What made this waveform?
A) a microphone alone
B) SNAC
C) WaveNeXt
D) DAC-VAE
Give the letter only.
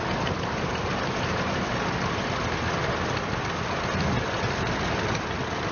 A